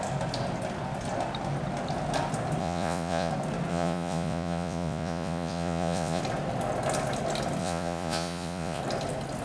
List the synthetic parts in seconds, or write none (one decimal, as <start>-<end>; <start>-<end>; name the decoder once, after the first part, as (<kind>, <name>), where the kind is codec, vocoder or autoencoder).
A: 2.6-3.3 (vocoder, Vocos); 3.7-6.2; 7.6-8.8